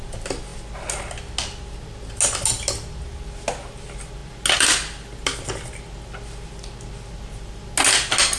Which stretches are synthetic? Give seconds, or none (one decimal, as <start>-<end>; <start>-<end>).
none